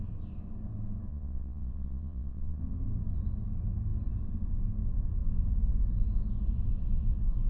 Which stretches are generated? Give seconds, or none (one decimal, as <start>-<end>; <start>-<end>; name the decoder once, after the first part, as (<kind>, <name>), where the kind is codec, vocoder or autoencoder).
1.1-2.6 (vocoder, Vocos)